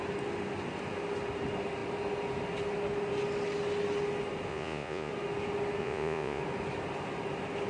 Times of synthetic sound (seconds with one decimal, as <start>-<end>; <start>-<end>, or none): 4.5-5.1; 5.8-6.4